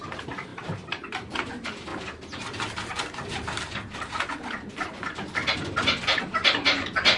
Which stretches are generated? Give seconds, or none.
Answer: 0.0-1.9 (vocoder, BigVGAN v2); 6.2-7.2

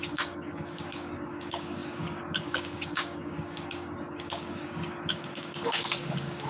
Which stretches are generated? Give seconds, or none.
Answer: 0.0-6.5 (codec, DAC)

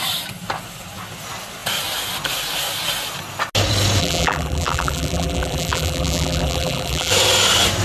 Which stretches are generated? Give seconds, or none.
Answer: 4.0-7.1 (vocoder, BigVGAN v2)

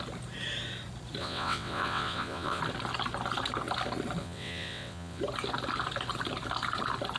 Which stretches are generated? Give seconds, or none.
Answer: 1.2-2.6 (vocoder, WaveNeXt); 4.2-5.2